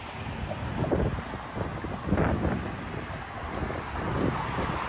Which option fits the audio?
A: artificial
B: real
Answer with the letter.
B